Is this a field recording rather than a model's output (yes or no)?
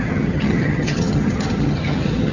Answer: no